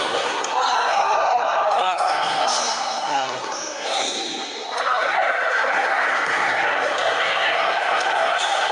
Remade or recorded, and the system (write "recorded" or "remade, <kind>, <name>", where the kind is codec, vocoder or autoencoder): remade, codec, SNAC